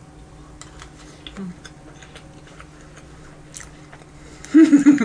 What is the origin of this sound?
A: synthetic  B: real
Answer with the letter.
B